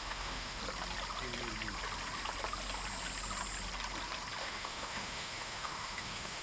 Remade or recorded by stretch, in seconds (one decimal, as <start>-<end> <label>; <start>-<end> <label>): 0.0-0.6 remade; 0.6-4.4 recorded; 4.4-6.4 remade